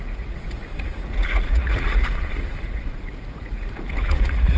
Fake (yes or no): yes